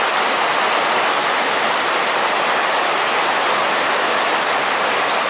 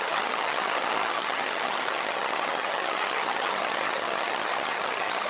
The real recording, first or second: first